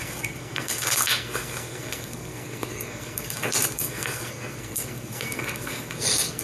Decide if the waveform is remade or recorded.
remade